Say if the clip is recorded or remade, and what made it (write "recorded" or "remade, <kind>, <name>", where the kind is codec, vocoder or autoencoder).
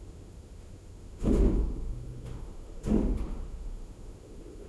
remade, autoencoder, DAC-VAE